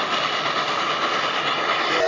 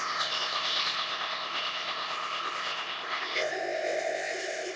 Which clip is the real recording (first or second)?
first